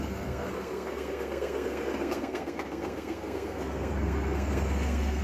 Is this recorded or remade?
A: remade